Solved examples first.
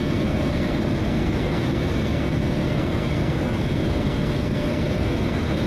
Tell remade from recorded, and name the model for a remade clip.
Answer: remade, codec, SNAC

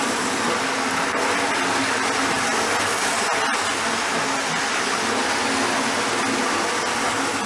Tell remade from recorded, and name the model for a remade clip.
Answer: recorded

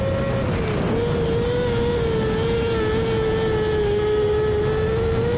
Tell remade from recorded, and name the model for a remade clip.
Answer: recorded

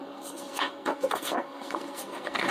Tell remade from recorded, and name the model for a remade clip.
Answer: remade, codec, SNAC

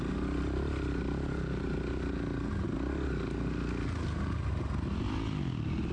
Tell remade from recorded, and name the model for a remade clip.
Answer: recorded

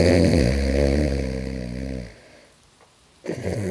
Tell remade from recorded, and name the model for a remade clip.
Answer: recorded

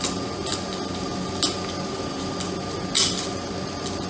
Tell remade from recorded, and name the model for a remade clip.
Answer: recorded